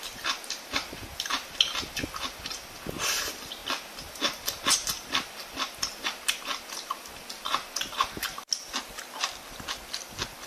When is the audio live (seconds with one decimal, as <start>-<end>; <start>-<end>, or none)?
0.0-10.5